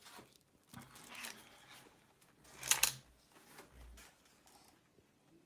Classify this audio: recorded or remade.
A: recorded